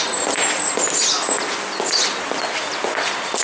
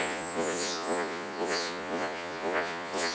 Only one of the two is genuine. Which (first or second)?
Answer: first